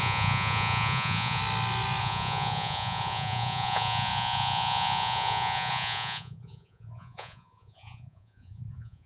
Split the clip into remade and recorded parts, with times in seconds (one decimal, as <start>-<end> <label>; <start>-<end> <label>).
0.0-1.4 remade; 1.4-2.0 recorded; 2.0-9.1 remade